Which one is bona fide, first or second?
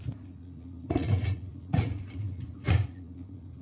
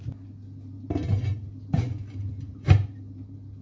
second